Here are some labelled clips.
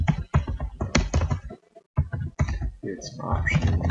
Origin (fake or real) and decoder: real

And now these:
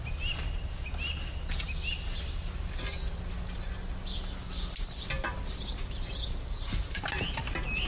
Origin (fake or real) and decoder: real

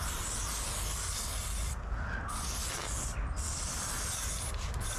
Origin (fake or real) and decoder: real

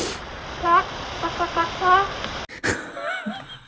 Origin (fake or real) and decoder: real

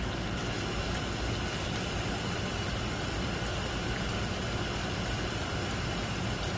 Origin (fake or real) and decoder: real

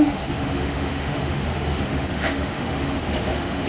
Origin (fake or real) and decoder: fake, autoencoder, DAC-VAE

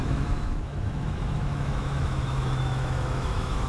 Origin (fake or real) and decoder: fake, autoencoder, DAC-VAE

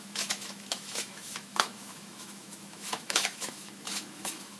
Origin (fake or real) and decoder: fake, autoencoder, DAC-VAE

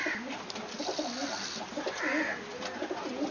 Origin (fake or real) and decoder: real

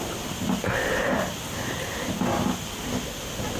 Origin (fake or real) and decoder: real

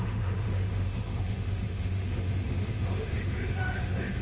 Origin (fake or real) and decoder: fake, autoencoder, DAC-VAE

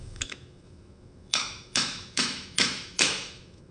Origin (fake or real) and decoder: fake, autoencoder, DAC-VAE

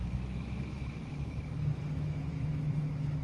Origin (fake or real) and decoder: fake, autoencoder, DAC-VAE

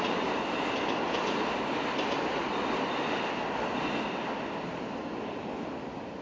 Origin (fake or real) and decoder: real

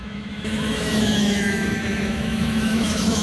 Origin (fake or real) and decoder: fake, autoencoder, DAC-VAE